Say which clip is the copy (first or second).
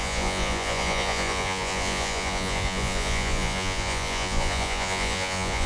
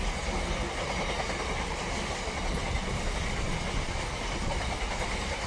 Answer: first